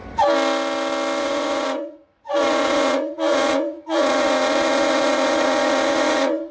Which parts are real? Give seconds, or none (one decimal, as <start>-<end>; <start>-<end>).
0.0-1.2